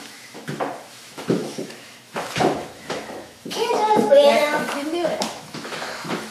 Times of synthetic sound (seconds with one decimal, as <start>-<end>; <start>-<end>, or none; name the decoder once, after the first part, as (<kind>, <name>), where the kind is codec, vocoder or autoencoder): 0.0-6.3 (autoencoder, DAC-VAE)